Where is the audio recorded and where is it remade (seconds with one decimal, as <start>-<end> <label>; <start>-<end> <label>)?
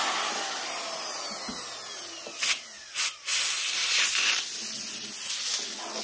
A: 0.0-6.0 recorded